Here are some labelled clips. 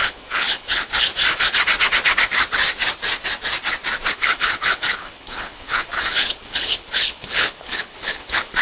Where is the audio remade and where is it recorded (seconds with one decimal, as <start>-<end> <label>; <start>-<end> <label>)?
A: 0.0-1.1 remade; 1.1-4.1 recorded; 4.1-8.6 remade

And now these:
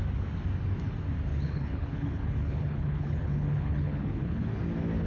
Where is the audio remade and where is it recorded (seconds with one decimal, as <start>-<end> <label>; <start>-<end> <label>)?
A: 0.0-1.3 recorded; 1.3-4.4 remade; 4.4-5.1 recorded

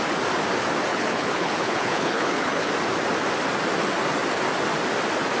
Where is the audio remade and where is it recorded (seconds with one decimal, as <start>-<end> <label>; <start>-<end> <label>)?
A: 0.0-0.9 recorded; 0.9-2.7 remade; 2.7-5.4 recorded

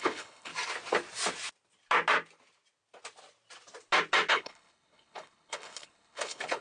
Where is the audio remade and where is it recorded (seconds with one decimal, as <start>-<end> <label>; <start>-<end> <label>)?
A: 0.0-0.5 remade; 0.5-4.3 recorded; 4.3-6.6 remade

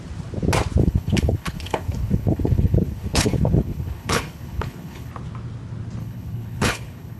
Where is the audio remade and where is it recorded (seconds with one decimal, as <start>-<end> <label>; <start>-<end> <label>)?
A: 0.0-0.8 recorded; 0.8-5.1 remade; 5.1-6.0 recorded; 6.0-7.2 remade